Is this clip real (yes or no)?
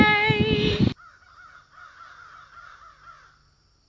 yes